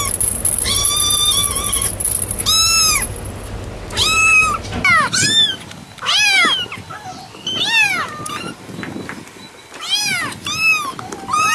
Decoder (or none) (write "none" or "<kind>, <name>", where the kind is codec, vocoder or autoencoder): none